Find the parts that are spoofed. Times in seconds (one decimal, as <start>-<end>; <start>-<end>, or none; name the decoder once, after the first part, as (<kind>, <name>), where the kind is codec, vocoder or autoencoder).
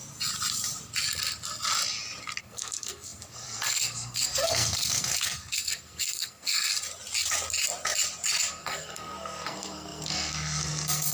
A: 2.4-6.7 (codec, SNAC); 8.5-11.1